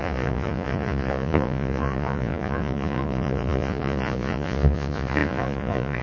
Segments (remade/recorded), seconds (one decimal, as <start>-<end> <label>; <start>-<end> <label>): 0.0-6.0 remade